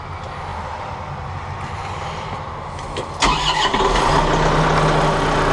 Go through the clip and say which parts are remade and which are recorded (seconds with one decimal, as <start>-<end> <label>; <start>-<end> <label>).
0.0-5.5 recorded